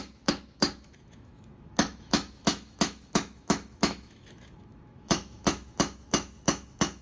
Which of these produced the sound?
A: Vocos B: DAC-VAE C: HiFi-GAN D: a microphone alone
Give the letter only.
B